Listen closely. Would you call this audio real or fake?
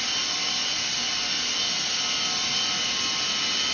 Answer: real